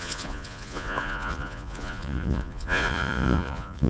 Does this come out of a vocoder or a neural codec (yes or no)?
yes